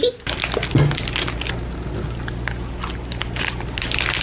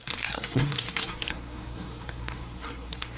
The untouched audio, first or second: first